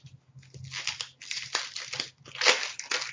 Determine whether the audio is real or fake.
real